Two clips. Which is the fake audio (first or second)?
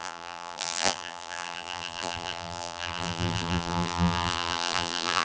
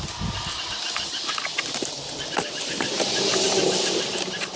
first